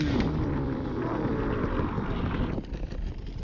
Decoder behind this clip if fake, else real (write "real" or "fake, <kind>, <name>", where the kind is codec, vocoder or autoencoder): real